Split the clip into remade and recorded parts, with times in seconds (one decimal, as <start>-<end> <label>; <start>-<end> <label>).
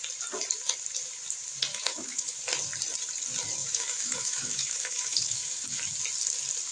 0.0-1.7 recorded; 1.7-2.4 remade; 2.4-3.6 recorded; 3.6-5.8 remade; 5.8-6.7 recorded